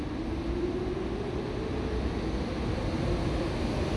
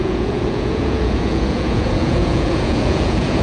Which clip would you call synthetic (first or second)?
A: second